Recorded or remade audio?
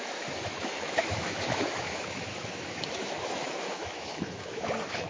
remade